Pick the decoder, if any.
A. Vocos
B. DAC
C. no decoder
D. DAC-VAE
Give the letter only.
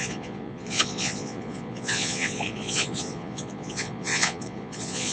A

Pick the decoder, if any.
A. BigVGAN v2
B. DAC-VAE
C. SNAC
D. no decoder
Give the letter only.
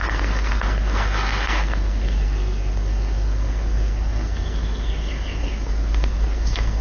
C